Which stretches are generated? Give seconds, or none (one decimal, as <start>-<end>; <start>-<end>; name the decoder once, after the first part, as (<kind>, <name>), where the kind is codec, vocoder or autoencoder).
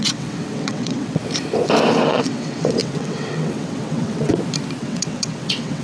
0.0-1.2 (vocoder, WaveNeXt); 2.0-4.3; 4.8-5.8